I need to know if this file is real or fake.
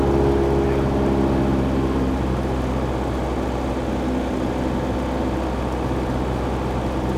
real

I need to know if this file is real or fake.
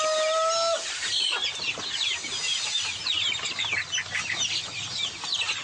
real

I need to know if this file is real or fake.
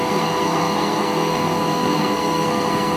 fake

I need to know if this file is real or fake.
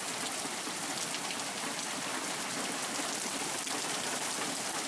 real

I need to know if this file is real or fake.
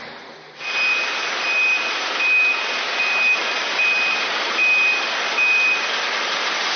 real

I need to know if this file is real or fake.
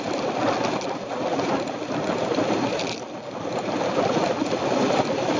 real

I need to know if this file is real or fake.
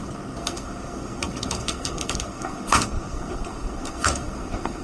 fake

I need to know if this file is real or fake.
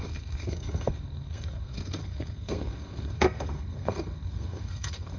fake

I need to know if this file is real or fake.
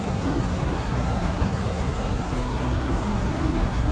fake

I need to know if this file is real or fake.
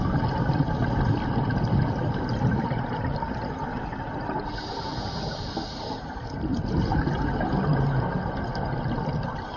real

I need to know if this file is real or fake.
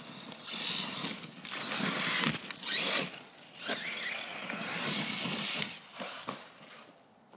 real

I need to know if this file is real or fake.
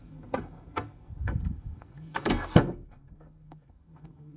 fake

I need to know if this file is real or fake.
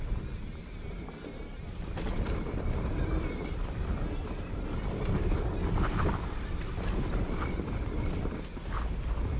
real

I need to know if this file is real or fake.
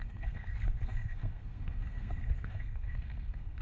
fake